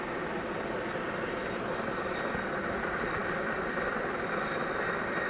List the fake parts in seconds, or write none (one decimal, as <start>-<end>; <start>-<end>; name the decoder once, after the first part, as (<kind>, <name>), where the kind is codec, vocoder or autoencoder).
none